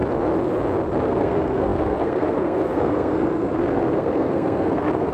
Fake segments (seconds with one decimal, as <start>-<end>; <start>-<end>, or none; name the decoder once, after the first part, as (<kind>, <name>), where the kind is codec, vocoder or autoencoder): 1.0-5.1 (codec, SNAC)